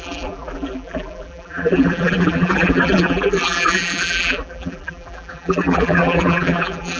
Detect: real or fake fake